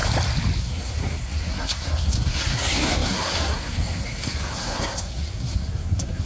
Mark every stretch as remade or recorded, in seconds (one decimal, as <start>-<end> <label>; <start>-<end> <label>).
0.0-0.6 recorded; 0.6-6.3 remade

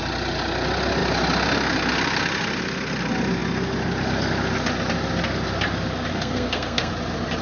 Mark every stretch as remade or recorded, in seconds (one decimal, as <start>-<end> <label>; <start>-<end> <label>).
0.0-6.1 recorded; 6.1-6.9 remade; 6.9-7.4 recorded

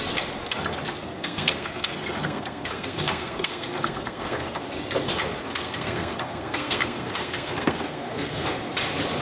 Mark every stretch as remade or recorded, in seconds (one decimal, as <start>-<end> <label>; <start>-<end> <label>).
0.0-1.0 recorded; 1.0-4.6 remade; 4.6-5.4 recorded; 5.4-8.6 remade; 8.6-9.2 recorded

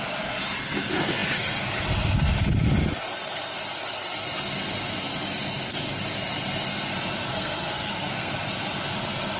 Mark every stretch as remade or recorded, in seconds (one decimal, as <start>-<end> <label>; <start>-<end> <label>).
0.0-7.3 recorded; 7.3-8.3 remade; 8.3-9.4 recorded